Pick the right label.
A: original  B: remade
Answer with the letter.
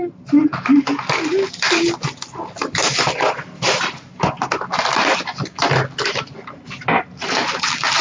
A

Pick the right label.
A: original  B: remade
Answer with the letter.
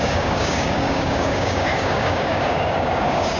B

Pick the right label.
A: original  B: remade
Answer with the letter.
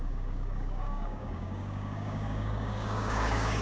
B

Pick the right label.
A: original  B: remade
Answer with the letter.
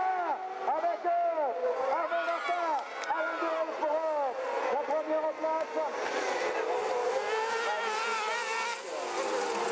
A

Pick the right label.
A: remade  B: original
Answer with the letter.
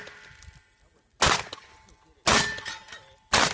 B